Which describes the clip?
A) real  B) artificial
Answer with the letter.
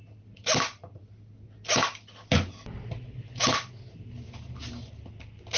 A